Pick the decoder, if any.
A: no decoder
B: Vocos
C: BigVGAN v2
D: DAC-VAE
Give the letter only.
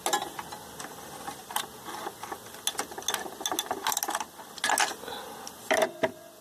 A